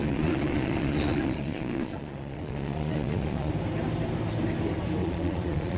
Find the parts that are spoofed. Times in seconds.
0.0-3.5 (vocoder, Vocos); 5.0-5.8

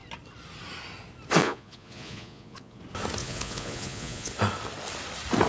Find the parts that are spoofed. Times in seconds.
1.4-2.8 (vocoder, Vocos); 3.2-4.3